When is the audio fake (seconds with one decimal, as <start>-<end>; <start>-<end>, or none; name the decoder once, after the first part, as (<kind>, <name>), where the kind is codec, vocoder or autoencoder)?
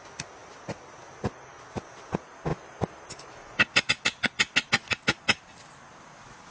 none